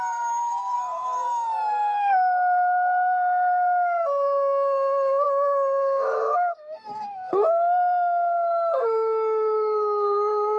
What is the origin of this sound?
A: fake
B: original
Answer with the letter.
A